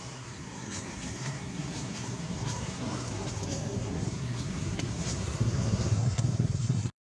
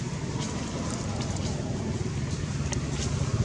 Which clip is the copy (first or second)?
first